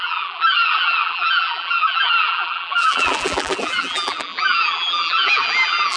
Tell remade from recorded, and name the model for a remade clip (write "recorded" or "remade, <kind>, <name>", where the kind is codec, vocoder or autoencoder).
remade, vocoder, BigVGAN v2